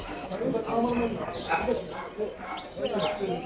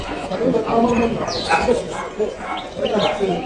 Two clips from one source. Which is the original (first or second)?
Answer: first